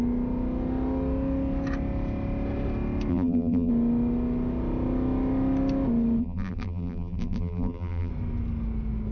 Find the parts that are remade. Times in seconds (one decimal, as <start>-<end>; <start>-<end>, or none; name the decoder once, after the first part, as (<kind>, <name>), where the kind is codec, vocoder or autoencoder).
3.1-3.7 (vocoder, BigVGAN v2); 6.2-8.1